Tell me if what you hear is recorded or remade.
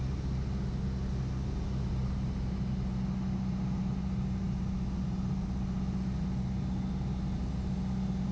recorded